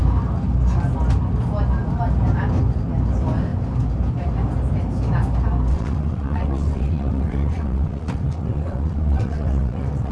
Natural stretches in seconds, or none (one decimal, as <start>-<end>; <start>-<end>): 0.0-5.7